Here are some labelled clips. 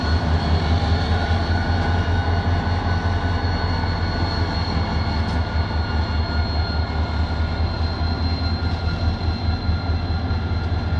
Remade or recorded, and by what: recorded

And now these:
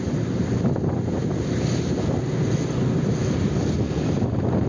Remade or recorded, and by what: recorded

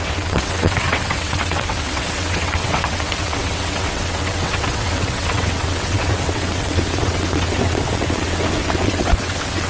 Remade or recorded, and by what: remade, vocoder, WaveNeXt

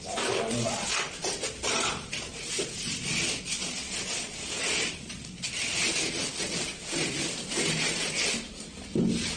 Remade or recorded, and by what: recorded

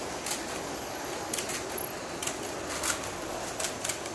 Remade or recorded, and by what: recorded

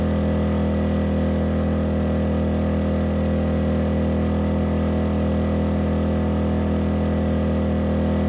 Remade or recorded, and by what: recorded